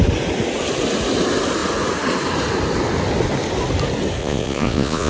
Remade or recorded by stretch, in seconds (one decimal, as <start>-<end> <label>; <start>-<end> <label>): 0.0-4.2 recorded; 4.2-5.1 remade